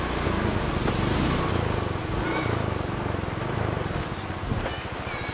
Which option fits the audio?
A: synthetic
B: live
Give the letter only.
B